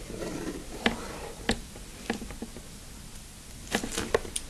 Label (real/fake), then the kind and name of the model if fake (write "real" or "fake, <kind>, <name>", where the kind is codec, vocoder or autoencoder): real